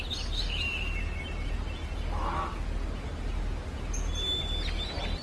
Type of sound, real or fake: real